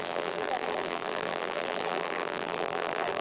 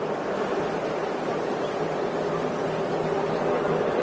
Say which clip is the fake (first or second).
first